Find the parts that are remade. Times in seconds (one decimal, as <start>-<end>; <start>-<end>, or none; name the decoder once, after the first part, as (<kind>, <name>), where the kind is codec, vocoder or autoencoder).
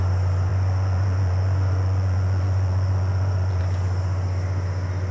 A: 0.5-3.6 (vocoder, Vocos)